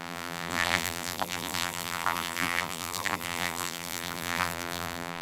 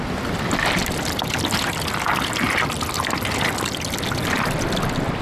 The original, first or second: second